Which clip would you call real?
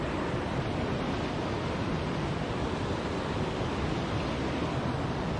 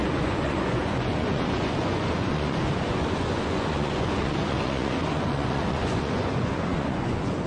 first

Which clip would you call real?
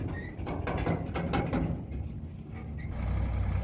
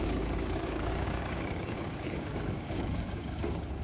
first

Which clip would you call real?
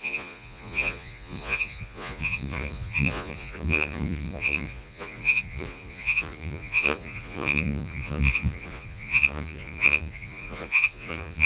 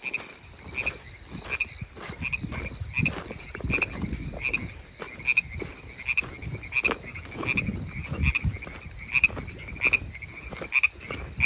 second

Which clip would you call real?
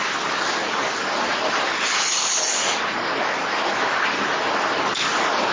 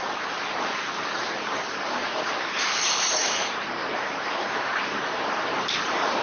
first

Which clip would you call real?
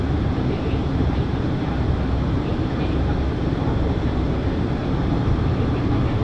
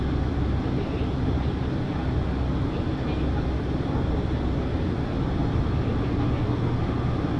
second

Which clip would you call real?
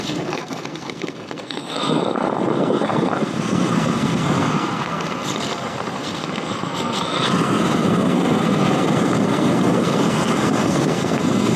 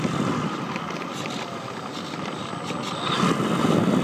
second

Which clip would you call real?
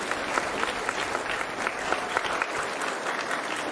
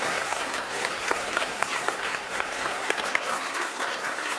first